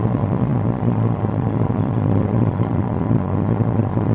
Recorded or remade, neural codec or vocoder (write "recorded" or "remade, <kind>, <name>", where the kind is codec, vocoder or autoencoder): remade, vocoder, Vocos